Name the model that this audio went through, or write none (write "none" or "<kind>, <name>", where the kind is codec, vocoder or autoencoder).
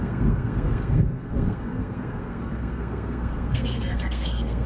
codec, SNAC